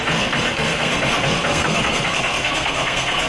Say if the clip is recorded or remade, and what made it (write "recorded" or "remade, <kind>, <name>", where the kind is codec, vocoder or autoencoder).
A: remade, codec, SNAC